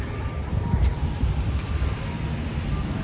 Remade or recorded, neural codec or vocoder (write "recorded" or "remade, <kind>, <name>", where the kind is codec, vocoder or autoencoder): remade, vocoder, BigVGAN v2